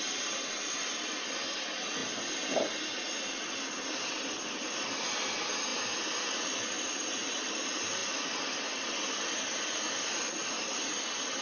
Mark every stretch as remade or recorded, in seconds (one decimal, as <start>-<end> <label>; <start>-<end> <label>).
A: 0.0-11.4 recorded